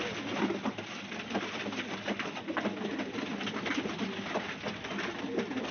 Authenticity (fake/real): real